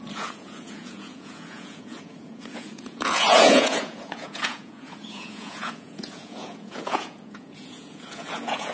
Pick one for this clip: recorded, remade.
remade